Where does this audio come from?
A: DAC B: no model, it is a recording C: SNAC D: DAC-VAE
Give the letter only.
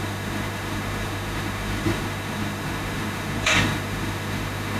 D